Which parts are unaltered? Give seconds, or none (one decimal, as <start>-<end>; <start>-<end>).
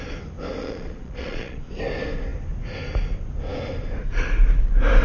0.0-0.6; 1.7-5.0